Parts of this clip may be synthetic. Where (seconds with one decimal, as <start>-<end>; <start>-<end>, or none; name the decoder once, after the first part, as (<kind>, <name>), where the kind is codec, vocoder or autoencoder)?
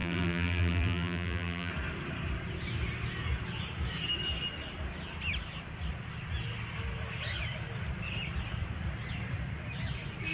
0.0-1.7 (vocoder, BigVGAN v2)